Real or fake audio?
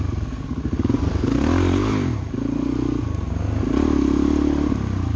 real